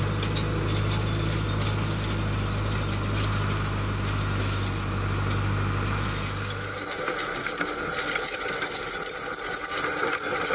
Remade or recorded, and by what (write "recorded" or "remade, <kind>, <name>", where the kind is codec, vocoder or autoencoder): recorded